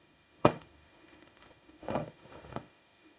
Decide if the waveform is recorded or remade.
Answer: remade